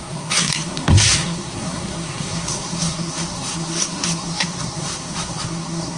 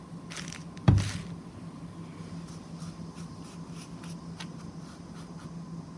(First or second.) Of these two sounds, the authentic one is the second